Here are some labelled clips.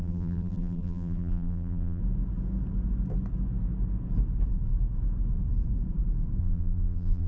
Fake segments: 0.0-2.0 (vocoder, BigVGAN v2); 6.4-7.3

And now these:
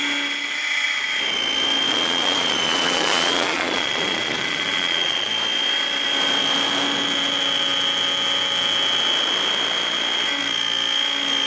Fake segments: 1.9-5.3 (vocoder, Vocos)

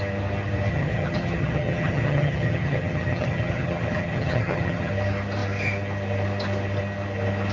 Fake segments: 0.7-4.9 (vocoder, HiFi-GAN)

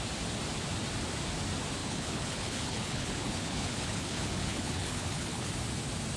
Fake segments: 1.8-5.5 (codec, HILCodec)

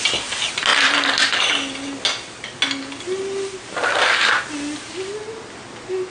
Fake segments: none

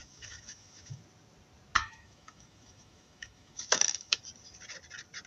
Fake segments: 0.0-1.0 (autoencoder, DAC-VAE); 1.8-4.2

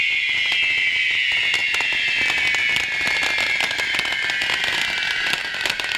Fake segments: none

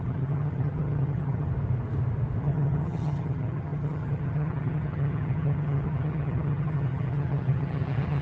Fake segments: 0.0-1.5 (vocoder, HiFi-GAN); 2.4-8.2